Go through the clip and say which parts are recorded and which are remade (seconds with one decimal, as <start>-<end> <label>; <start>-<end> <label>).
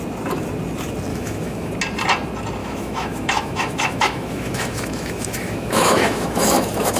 0.0-1.1 recorded; 1.1-1.7 remade; 1.7-2.6 recorded; 2.6-7.0 remade